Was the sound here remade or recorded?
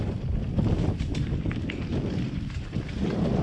remade